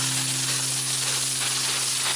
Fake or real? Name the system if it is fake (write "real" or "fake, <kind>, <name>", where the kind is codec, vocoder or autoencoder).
real